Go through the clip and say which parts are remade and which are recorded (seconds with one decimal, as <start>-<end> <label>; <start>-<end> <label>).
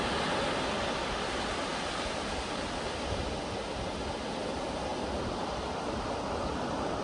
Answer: 0.0-7.0 recorded